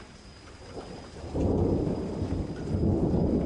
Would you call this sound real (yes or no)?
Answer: yes